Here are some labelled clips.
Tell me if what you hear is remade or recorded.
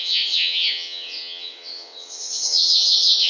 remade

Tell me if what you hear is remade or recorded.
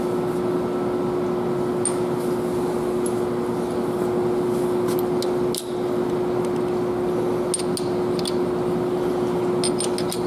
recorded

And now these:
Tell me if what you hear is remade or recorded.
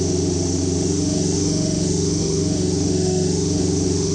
remade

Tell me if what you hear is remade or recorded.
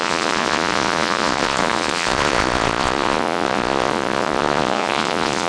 remade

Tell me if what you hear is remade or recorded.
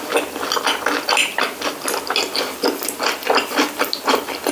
recorded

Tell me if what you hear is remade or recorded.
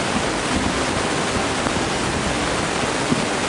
recorded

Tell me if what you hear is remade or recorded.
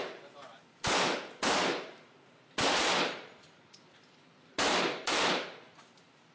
remade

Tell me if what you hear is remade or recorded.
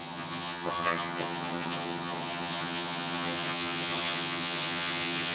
remade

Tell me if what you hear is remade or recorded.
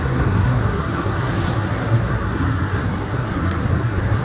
remade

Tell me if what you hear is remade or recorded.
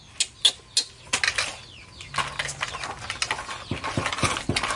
recorded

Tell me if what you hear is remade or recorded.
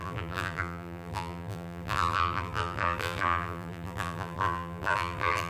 remade